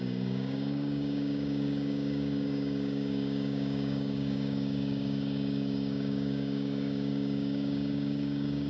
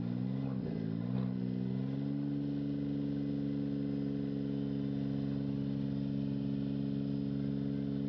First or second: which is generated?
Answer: first